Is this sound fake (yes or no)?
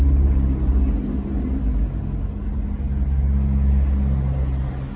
no